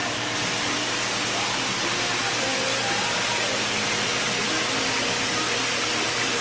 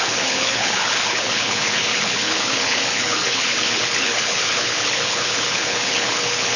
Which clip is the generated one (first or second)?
second